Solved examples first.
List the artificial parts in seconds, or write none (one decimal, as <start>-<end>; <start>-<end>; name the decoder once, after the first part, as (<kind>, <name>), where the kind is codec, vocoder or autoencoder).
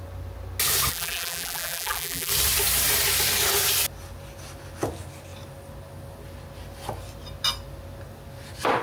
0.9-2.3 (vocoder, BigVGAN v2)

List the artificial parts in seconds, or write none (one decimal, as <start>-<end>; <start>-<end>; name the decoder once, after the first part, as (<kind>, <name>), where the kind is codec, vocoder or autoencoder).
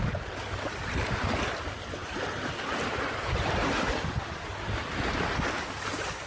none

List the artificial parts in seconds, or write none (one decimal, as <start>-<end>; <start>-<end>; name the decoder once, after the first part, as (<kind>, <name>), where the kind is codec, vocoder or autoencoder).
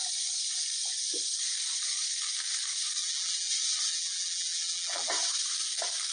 3.0-3.5 (vocoder, BigVGAN v2); 3.9-5.1